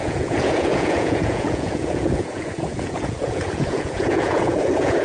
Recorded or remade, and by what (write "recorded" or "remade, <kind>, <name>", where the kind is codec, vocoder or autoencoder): remade, vocoder, Vocos